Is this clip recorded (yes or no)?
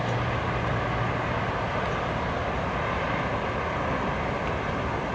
yes